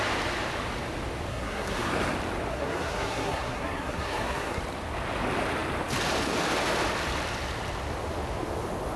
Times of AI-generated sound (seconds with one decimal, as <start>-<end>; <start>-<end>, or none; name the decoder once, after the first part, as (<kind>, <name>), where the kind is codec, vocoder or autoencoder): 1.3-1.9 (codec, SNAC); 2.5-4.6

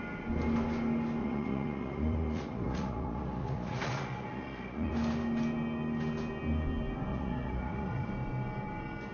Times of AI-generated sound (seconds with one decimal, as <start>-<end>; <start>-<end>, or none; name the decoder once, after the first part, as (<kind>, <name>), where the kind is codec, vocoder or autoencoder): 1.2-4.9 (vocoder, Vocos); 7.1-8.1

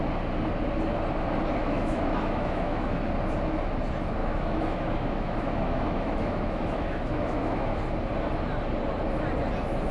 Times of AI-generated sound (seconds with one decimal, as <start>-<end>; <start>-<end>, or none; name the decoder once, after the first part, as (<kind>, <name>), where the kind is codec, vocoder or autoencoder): 1.6-3.0 (autoencoder, DAC-VAE); 4.2-7.8

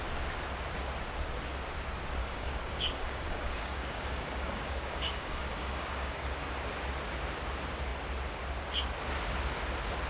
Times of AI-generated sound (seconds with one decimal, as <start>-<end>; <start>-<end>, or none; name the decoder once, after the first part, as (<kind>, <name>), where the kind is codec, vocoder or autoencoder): 2.2-6.2 (codec, DAC)

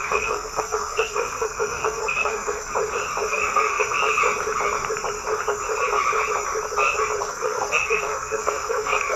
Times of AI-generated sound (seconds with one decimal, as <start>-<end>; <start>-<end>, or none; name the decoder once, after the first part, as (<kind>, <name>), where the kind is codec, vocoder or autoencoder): 0.0-2.7 (codec, SNAC); 3.3-4.0; 7.2-9.2

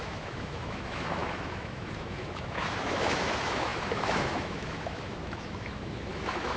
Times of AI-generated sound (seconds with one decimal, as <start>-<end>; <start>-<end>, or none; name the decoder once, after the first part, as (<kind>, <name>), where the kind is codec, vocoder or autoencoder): 0.0-6.6 (autoencoder, DAC-VAE)

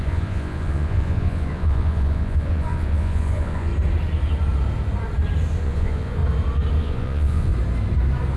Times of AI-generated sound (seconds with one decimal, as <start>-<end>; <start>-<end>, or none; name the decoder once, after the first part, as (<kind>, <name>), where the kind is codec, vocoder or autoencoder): 0.0-3.7 (vocoder, Vocos); 5.6-6.2; 6.8-7.5